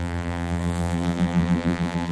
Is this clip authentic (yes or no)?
no